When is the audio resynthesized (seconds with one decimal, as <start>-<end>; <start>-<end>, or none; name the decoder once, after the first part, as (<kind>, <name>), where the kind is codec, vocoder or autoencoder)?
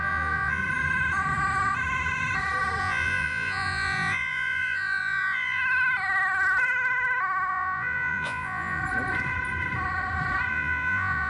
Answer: 0.0-0.6 (vocoder, Vocos); 2.8-5.6; 7.5-8.8; 10.5-11.3